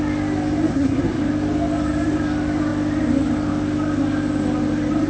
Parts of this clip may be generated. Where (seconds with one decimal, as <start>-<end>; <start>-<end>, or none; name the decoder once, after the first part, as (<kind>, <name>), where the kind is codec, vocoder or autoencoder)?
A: 0.7-1.2 (codec, SNAC)